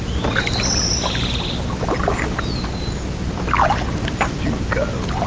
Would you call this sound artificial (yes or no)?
no